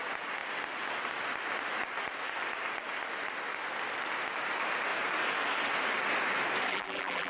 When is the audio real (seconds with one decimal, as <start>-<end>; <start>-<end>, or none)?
0.0-6.7